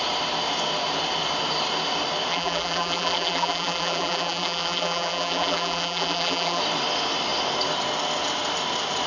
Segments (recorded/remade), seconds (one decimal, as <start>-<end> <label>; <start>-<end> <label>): 0.0-2.3 recorded; 2.3-6.6 remade; 6.6-9.1 recorded